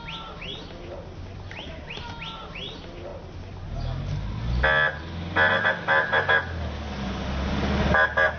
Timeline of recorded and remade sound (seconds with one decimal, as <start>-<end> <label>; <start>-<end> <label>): 0.0-8.4 recorded